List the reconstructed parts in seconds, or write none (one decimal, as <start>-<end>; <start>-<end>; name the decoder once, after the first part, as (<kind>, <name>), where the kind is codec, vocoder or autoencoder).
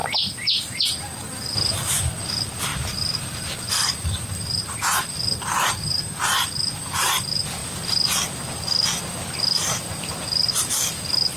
none